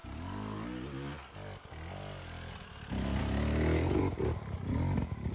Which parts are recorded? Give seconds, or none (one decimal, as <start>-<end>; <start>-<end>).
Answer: 0.0-5.3